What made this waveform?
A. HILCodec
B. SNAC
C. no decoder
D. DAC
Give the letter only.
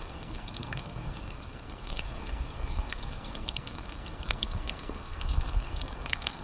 B